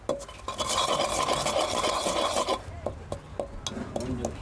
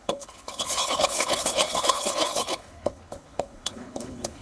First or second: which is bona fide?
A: first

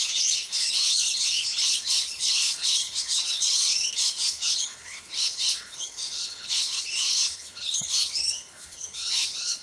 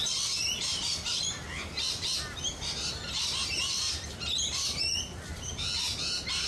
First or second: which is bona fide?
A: second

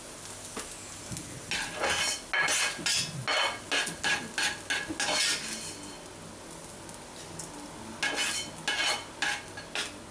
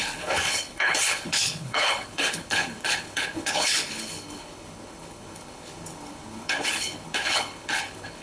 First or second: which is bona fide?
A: first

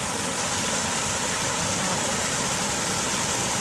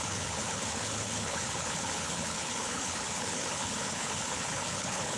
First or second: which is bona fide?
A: first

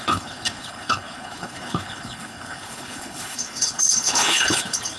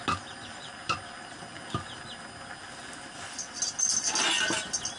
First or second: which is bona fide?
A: second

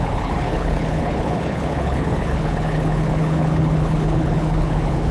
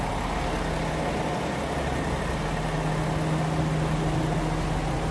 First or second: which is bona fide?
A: second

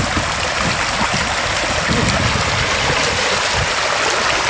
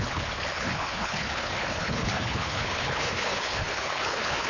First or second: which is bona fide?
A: first